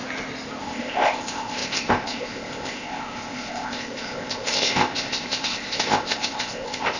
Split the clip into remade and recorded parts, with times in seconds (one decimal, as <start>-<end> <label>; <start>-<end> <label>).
0.0-0.6 recorded; 0.6-7.0 remade